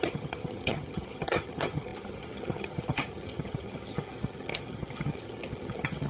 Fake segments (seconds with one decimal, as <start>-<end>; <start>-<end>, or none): 0.0-6.1